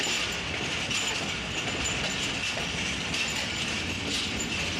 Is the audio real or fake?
real